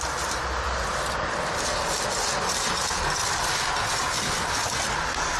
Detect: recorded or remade recorded